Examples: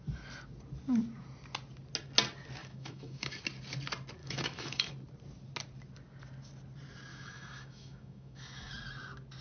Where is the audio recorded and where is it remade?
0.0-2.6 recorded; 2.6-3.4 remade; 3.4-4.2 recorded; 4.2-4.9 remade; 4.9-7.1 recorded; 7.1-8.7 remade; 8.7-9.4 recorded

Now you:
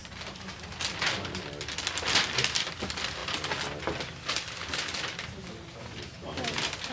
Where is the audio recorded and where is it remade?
0.0-6.9 recorded

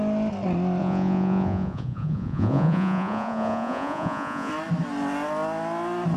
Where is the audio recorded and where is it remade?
0.0-0.8 recorded; 0.8-4.5 remade; 4.5-6.2 recorded

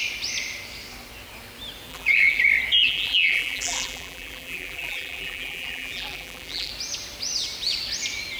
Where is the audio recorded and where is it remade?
0.0-1.9 recorded; 1.9-2.4 remade; 2.4-2.8 recorded; 2.8-6.7 remade; 6.7-8.4 recorded

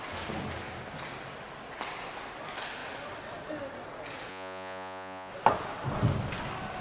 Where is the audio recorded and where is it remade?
0.0-4.3 recorded; 4.3-5.3 remade; 5.3-6.8 recorded